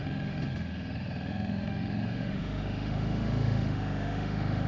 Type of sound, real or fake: fake